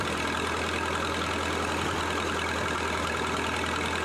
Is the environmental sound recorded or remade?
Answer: recorded